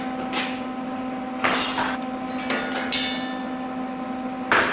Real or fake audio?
real